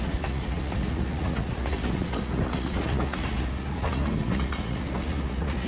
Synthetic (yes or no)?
yes